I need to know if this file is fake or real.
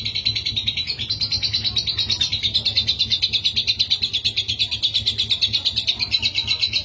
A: real